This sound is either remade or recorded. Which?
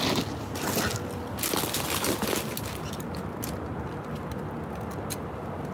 recorded